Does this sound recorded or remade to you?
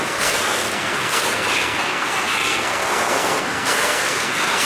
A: remade